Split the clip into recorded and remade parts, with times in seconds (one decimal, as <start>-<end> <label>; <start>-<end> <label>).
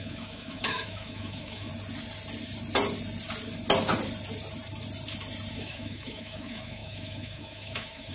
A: 0.0-1.7 remade; 1.7-5.5 recorded; 5.5-8.1 remade